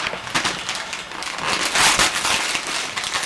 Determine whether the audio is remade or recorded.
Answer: recorded